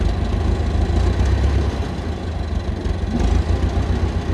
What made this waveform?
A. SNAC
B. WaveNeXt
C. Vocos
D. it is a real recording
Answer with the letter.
D